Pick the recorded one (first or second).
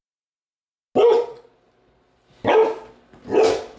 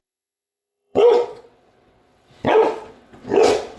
first